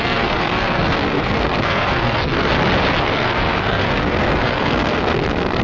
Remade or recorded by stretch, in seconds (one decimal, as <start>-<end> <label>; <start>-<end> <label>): 0.0-2.5 remade; 2.5-3.0 recorded; 3.0-5.6 remade

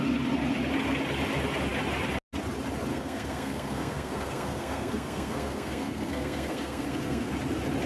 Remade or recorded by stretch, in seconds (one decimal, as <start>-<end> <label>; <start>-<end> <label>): 0.0-2.9 recorded; 2.9-7.3 remade; 7.3-7.9 recorded

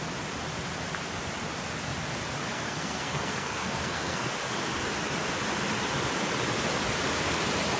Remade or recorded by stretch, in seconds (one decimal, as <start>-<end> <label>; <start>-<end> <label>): 0.0-2.5 recorded; 2.5-4.3 remade; 4.3-7.8 recorded

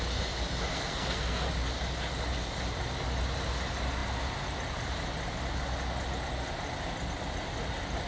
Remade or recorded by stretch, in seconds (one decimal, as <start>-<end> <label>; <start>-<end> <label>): 0.0-0.7 recorded; 0.7-1.5 remade; 1.5-8.1 recorded